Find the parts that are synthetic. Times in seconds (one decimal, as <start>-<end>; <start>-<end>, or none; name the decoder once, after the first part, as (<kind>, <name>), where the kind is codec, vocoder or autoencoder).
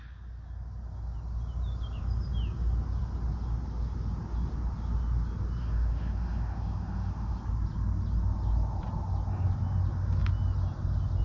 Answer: 5.6-7.4 (autoencoder, DAC-VAE)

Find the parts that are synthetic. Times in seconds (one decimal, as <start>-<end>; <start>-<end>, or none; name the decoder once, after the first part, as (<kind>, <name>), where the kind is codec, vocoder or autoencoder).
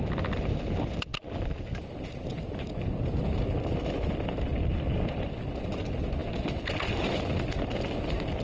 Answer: none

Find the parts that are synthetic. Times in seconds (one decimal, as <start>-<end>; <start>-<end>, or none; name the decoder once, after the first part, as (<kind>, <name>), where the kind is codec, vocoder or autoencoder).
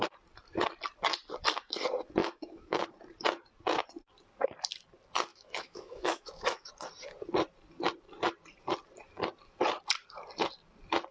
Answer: 2.2-2.8 (autoencoder, DAC-VAE); 5.3-6.7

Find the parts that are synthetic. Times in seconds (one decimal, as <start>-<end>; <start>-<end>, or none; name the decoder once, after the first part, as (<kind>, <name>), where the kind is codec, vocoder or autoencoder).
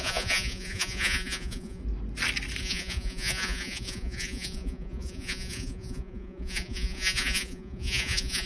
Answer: 0.0-1.8 (vocoder, Vocos); 2.6-8.5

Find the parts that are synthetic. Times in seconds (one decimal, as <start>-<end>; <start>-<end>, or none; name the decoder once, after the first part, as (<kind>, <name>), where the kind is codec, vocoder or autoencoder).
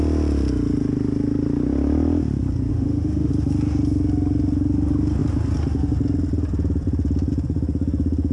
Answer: 2.7-3.3 (autoencoder, DAC-VAE)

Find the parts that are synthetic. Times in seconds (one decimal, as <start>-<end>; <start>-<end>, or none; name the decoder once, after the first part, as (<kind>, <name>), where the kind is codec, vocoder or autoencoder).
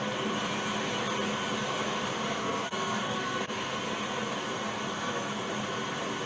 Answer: 2.4-3.7 (codec, SNAC); 4.9-5.5